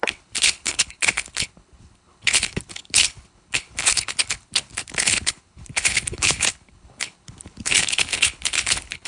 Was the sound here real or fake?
fake